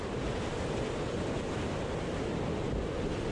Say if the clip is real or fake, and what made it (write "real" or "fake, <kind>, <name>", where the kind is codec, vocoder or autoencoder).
real